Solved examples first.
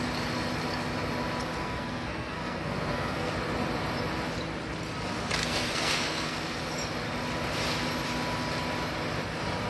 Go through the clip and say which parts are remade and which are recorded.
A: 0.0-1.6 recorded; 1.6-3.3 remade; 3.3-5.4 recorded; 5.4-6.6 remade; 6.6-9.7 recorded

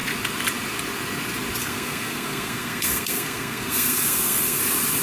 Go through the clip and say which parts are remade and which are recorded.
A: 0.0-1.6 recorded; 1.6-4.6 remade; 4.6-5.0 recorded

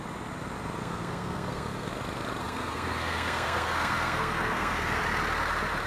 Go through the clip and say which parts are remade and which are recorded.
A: 0.0-0.8 recorded; 0.8-1.9 remade; 1.9-2.4 recorded; 2.4-5.0 remade; 5.0-5.9 recorded